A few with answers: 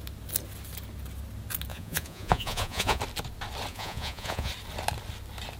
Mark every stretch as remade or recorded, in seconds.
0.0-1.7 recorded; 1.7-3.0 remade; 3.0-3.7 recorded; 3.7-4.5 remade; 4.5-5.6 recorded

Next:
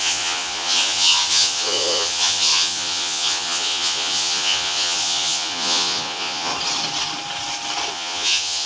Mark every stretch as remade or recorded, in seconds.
0.0-6.5 remade; 6.5-7.9 recorded; 7.9-8.7 remade

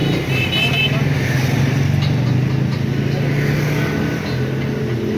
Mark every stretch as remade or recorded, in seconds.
0.0-5.2 recorded

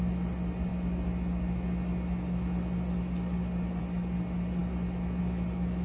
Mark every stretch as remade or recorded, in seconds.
0.0-5.8 recorded

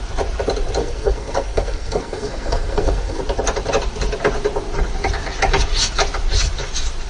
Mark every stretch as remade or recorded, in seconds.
0.0-0.8 recorded; 0.8-3.2 remade; 3.2-7.1 recorded

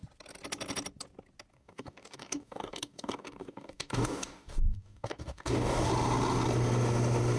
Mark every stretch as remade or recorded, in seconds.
0.0-1.5 recorded; 1.5-5.9 remade; 5.9-7.4 recorded

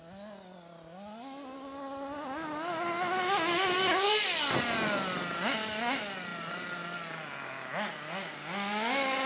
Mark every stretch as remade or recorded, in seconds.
0.0-9.3 recorded

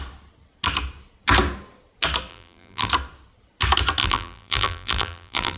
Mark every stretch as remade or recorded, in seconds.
0.0-2.3 recorded; 2.3-2.9 remade; 2.9-4.0 recorded; 4.0-5.6 remade